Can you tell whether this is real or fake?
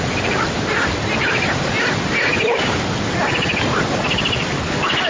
real